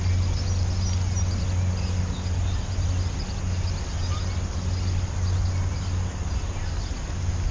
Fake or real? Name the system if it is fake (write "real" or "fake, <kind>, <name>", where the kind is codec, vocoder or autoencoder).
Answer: real